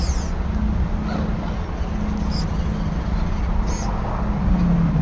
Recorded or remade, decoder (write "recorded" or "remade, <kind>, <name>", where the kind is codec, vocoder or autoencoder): recorded